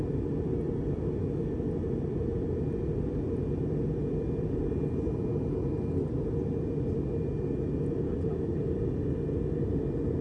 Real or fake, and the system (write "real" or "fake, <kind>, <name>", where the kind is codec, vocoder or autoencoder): real